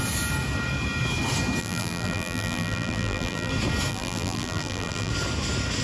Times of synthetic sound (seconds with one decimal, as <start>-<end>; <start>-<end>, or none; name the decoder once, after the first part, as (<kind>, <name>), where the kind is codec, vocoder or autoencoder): 1.6-3.5 (vocoder, BigVGAN v2); 3.9-5.1